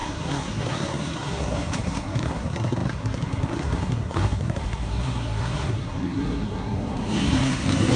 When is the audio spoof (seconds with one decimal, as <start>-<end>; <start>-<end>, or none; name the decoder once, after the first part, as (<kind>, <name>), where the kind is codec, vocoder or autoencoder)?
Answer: 0.0-8.0 (codec, SNAC)

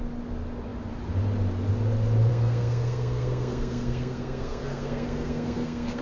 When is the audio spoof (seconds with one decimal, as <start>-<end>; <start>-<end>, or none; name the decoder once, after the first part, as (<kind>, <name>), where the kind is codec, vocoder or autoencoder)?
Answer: 2.3-6.0 (codec, SNAC)

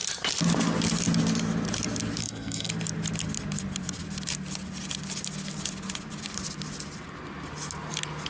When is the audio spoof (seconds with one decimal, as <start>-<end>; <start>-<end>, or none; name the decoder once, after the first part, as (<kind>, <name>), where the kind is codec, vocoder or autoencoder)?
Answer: 2.2-2.7 (codec, SNAC)

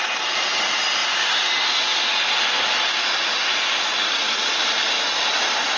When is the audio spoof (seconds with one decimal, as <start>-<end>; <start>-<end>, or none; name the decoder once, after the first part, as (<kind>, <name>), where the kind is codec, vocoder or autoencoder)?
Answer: none

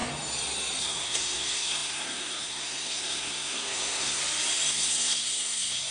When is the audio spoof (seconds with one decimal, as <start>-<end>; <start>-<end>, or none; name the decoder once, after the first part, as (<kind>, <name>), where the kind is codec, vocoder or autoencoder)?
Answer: 0.8-4.2 (codec, SNAC); 4.7-5.9

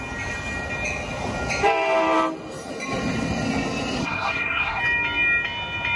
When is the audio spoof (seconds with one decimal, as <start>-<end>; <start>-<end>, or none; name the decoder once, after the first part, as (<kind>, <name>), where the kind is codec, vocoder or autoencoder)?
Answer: 4.0-4.8 (codec, SNAC)